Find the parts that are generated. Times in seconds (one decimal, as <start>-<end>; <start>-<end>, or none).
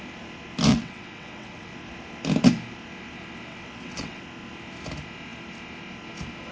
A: 0.7-1.7; 3.5-4.2